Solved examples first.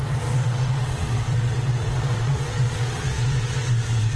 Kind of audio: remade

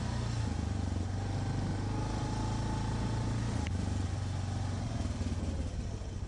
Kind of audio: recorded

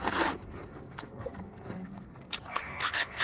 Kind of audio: remade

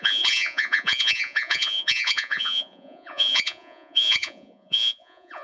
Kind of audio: remade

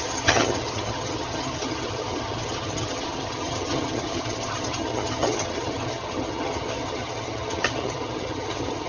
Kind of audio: remade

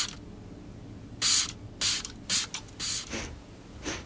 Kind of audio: recorded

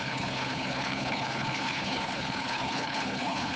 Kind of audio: remade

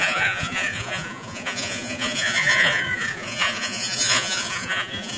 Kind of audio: remade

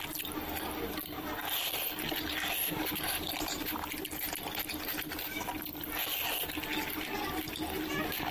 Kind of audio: recorded